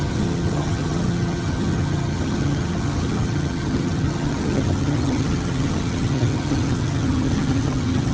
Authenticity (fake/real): fake